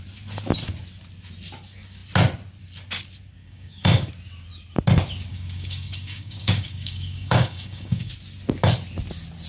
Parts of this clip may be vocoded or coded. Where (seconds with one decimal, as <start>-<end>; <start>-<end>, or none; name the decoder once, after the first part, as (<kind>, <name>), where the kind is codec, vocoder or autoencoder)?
3.4-4.1 (codec, DAC); 5.3-8.1